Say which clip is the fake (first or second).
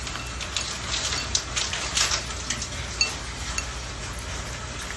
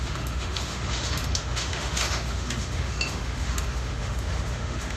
second